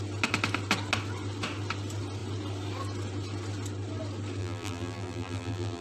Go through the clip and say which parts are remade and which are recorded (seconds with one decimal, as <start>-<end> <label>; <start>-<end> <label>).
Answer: 0.0-4.4 recorded; 4.4-5.8 remade